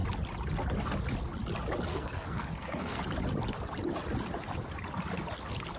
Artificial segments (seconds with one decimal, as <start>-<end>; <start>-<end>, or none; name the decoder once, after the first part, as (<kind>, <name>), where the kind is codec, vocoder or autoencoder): 1.9-3.0 (codec, SNAC)